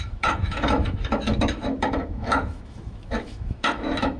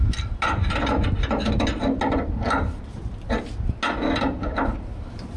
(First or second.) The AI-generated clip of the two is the first